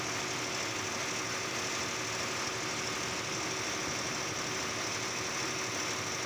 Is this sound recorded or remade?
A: recorded